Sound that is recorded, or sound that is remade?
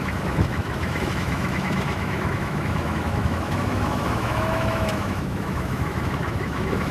remade